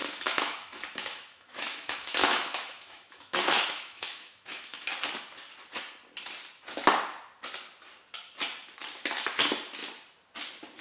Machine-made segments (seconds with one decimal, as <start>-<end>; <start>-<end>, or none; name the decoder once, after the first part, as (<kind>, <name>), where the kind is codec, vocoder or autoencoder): 0.0-4.9 (autoencoder, DAC-VAE)